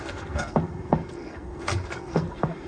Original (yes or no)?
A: no